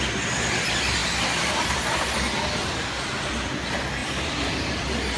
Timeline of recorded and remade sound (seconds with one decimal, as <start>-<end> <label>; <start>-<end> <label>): 0.0-1.0 recorded; 1.0-2.0 remade; 2.0-5.2 recorded